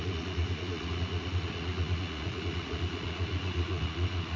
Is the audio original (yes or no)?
no